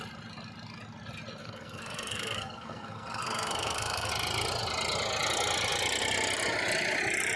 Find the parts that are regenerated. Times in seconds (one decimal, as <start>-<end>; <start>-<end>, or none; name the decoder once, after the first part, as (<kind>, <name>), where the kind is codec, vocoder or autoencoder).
1.4-4.1 (codec, SNAC)